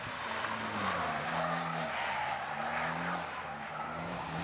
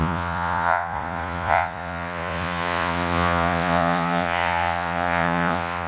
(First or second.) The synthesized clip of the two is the second